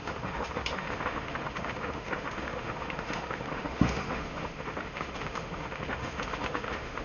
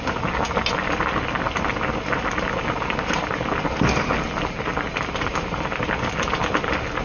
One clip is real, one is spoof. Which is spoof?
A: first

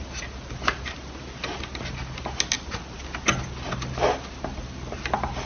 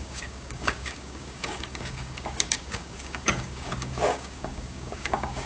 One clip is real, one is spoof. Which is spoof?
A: second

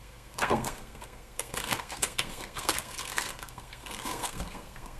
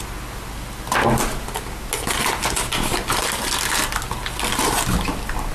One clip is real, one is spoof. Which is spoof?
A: first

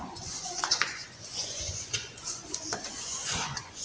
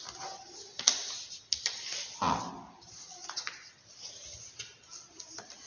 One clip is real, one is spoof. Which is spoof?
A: first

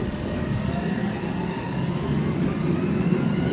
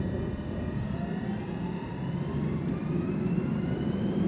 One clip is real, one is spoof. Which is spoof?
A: first